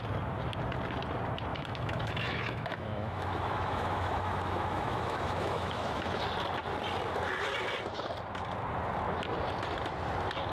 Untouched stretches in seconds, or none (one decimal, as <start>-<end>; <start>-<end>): 0.0-1.5; 6.2-10.5